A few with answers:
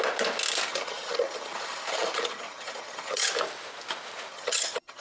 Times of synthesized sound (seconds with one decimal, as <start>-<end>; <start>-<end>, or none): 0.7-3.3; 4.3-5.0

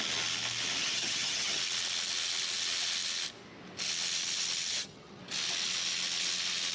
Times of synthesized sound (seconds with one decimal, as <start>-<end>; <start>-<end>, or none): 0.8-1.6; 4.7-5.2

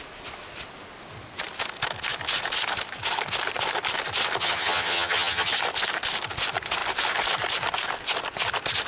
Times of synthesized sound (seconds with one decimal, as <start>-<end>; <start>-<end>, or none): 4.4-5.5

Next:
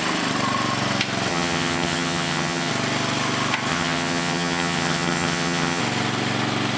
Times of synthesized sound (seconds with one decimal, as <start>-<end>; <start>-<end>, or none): 1.3-2.7; 3.7-5.8

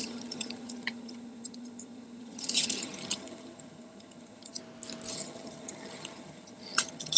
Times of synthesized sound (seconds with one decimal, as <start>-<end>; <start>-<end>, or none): 0.0-4.6; 5.1-7.2